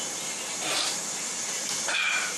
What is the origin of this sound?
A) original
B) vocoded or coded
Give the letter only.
B